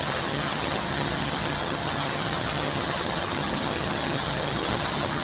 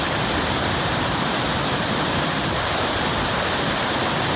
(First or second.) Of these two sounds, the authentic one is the second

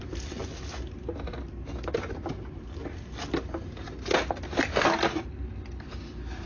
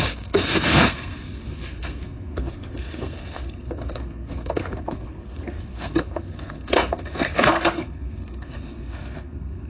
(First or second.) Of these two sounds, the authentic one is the first